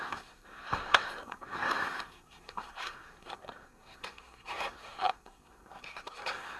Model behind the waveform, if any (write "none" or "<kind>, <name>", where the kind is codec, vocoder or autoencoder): codec, SNAC